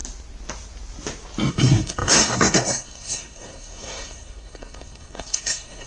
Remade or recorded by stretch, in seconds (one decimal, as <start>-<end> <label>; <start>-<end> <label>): 0.0-1.5 recorded; 1.5-5.9 remade